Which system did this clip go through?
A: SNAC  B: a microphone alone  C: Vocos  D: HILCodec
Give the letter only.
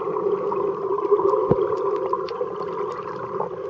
B